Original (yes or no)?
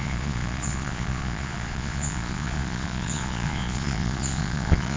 no